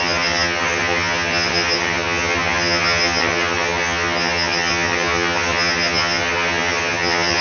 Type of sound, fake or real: fake